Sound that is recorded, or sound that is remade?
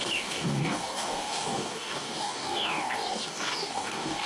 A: remade